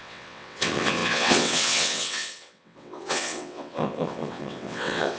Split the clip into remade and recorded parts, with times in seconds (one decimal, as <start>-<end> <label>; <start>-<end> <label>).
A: 0.0-5.2 remade